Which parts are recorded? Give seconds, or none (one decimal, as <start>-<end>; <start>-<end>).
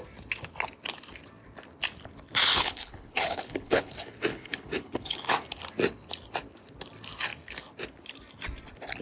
0.0-2.5; 3.9-4.3; 5.3-9.0